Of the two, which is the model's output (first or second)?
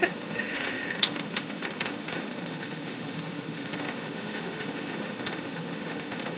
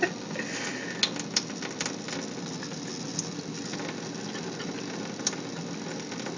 first